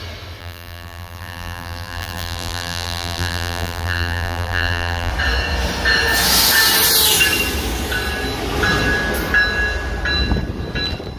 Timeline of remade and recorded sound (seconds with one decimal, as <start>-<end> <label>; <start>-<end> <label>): 0.0-0.4 recorded; 0.4-5.1 remade; 5.1-11.2 recorded